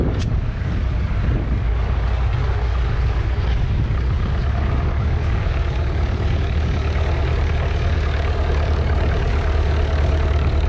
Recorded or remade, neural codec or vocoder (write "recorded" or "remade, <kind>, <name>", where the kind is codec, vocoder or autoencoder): remade, codec, DAC